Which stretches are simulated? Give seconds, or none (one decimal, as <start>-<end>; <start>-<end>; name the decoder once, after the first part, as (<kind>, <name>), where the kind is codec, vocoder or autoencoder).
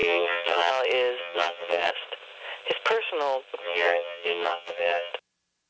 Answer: 0.0-0.7 (vocoder, HiFi-GAN); 1.2-1.9; 3.6-5.1